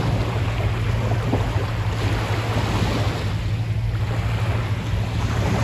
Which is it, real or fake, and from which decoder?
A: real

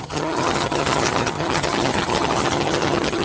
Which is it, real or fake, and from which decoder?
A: fake, vocoder, HiFi-GAN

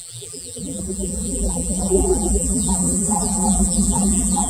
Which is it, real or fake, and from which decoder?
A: fake, vocoder, BigVGAN v2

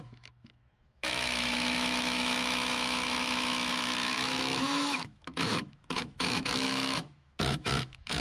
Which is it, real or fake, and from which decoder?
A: fake, autoencoder, DAC-VAE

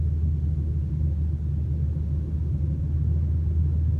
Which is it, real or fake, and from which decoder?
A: real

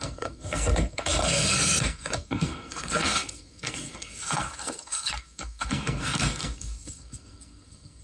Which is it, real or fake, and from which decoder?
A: fake, codec, SNAC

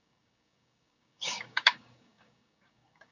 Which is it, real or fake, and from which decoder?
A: fake, codec, DAC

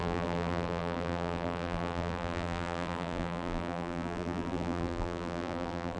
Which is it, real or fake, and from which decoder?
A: fake, vocoder, BigVGAN v2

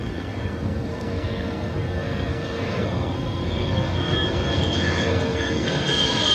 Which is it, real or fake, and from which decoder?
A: fake, codec, SNAC